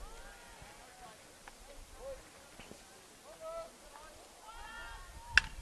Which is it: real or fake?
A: real